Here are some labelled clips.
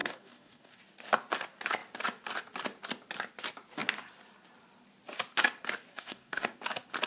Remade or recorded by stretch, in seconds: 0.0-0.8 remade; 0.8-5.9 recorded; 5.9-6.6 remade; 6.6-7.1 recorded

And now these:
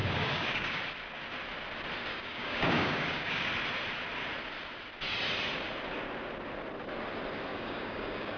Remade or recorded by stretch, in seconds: 0.0-0.8 remade; 0.8-2.1 recorded; 2.1-3.4 remade; 3.4-7.5 recorded; 7.5-8.4 remade

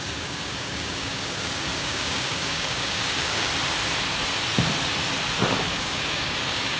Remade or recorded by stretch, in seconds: 0.0-3.5 remade; 3.5-5.8 recorded; 5.8-6.8 remade